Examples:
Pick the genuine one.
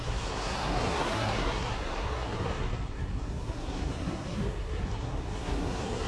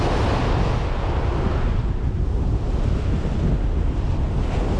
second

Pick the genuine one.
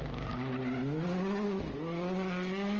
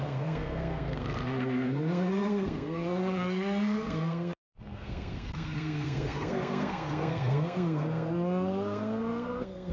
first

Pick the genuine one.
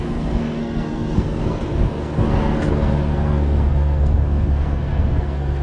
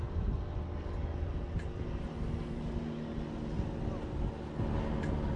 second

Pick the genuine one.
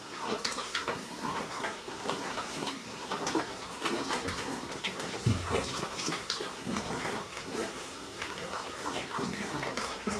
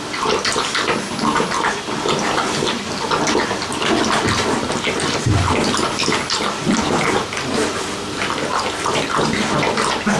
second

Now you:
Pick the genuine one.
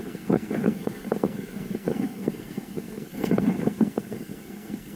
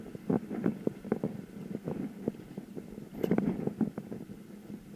second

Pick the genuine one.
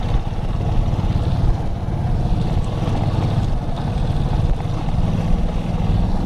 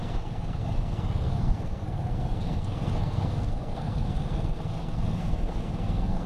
first